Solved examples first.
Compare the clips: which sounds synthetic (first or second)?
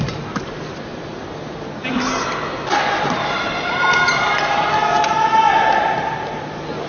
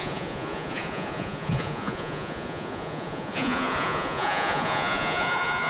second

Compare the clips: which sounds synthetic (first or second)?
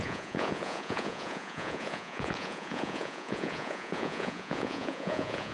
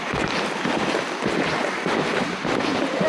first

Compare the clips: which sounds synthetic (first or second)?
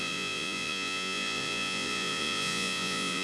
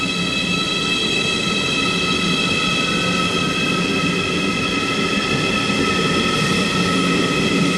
first